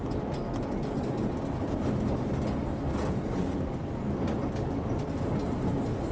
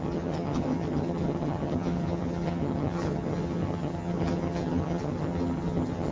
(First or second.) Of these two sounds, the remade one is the second